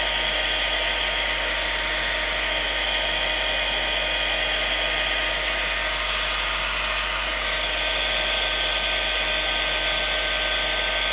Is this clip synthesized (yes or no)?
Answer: no